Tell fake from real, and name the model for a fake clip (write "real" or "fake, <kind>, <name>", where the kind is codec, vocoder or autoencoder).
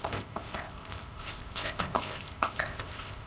fake, codec, ZipCodec